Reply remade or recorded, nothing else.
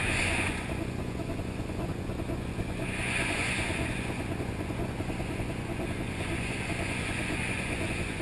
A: remade